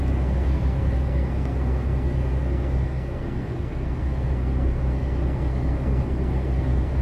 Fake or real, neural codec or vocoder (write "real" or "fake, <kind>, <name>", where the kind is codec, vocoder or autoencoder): fake, codec, SNAC